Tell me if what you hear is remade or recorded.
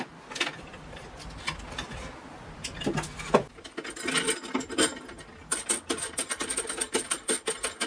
recorded